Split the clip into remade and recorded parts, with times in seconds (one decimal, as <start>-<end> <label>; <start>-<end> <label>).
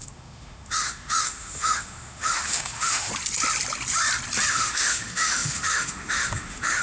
0.0-3.1 remade; 3.1-4.5 recorded; 4.5-6.8 remade